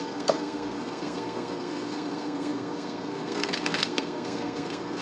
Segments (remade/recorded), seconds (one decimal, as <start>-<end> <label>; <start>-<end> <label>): 0.0-5.0 remade